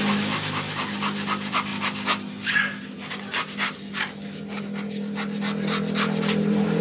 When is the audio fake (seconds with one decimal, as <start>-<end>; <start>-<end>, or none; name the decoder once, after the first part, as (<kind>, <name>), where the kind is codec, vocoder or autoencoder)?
none